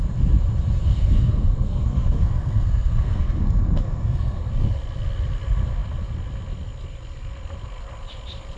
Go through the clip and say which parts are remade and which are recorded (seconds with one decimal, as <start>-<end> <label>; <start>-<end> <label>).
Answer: 0.0-0.8 recorded; 0.8-4.4 remade; 4.4-8.6 recorded